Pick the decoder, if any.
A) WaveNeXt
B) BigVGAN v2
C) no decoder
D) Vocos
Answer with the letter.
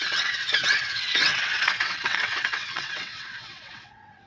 A